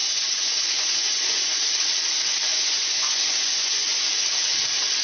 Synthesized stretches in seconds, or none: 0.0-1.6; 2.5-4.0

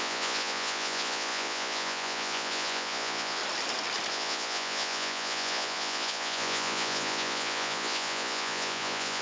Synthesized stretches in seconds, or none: 0.0-3.4; 4.1-9.2

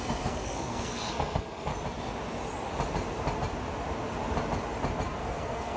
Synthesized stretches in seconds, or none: 0.0-1.7; 5.2-5.8

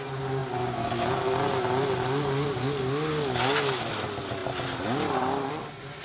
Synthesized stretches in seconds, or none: none

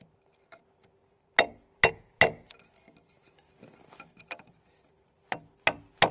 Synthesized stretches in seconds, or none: none

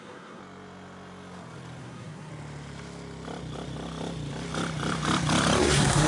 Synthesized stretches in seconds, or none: 0.0-0.4; 1.8-2.3; 5.6-6.1